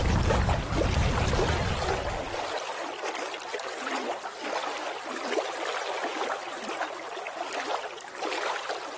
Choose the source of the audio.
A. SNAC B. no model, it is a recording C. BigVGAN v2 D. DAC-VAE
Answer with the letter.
B